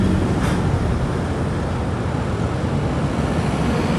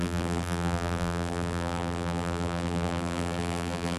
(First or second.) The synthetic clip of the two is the second